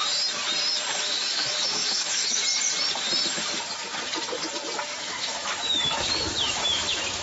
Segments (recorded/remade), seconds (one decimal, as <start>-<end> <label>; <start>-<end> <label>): 0.0-1.0 recorded; 1.0-2.4 remade; 2.4-5.0 recorded; 5.0-7.2 remade